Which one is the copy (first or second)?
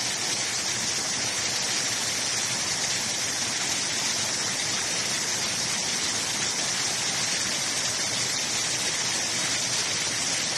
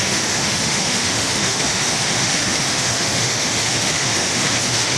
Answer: second